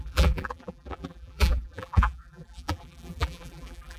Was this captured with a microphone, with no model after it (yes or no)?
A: no